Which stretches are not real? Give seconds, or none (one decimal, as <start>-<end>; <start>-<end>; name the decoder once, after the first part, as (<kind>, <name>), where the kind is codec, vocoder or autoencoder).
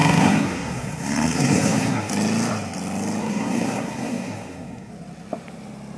0.0-2.1 (codec, SNAC); 3.2-4.9